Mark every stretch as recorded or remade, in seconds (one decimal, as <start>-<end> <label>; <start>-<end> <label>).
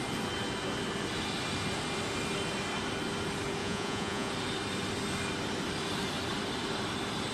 0.0-3.6 recorded; 3.6-4.3 remade; 4.3-7.3 recorded